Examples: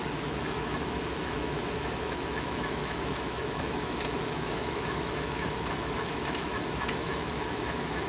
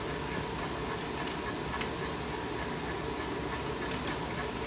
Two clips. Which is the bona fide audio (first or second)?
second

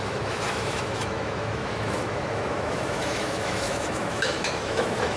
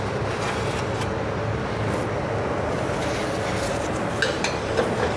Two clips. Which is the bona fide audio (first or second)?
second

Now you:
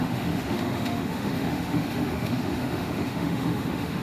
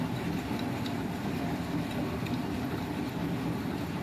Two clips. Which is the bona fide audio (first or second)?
second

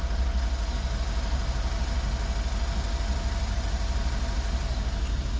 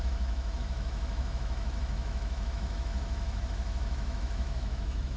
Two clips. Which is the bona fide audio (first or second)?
first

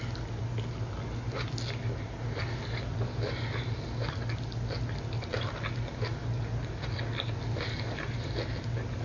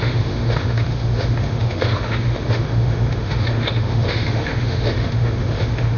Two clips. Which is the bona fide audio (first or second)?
first